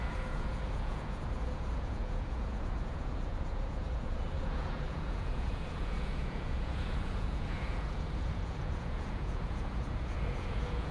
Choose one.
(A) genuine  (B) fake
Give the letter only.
B